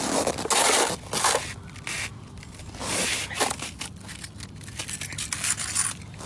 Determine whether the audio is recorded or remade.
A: recorded